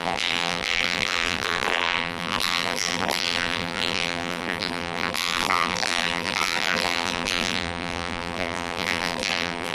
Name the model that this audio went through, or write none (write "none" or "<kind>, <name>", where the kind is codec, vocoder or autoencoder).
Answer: vocoder, BigVGAN v2